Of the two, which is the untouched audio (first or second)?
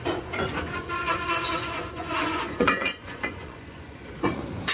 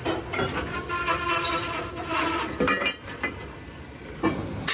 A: second